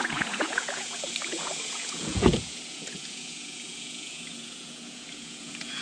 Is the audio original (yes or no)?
no